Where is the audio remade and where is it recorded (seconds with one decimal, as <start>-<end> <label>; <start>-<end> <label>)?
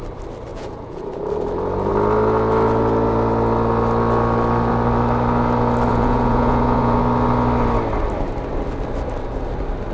0.0-0.5 recorded; 0.5-1.2 remade; 1.2-5.9 recorded; 5.9-7.0 remade; 7.0-9.9 recorded